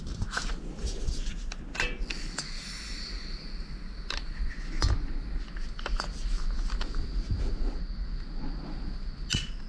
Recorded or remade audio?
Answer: recorded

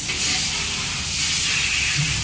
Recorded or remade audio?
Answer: recorded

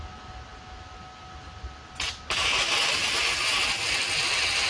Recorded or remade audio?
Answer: recorded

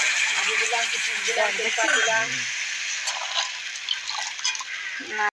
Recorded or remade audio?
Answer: remade